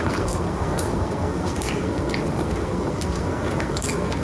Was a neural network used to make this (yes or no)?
yes